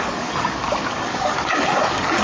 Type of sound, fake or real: fake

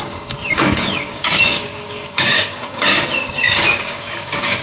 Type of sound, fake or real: fake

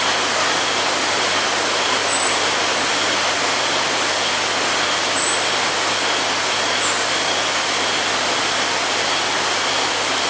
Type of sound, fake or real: real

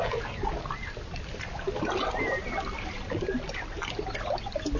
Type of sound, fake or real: real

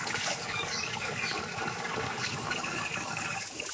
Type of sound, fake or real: fake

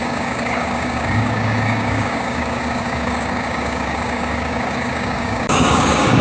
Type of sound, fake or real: fake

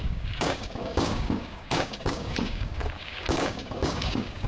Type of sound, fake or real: fake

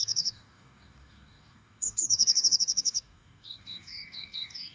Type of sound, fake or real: fake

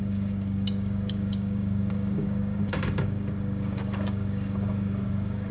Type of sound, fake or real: fake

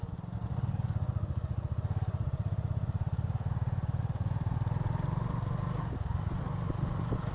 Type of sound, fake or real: real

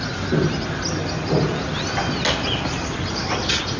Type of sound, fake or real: real